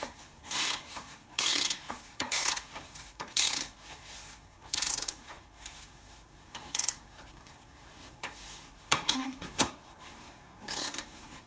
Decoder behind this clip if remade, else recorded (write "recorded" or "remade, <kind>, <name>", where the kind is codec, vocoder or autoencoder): remade, codec, SNAC